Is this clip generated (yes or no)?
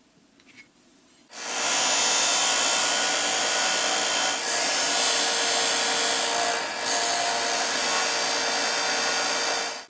no